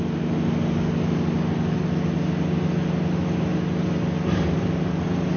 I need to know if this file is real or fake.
real